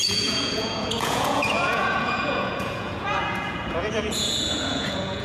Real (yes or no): no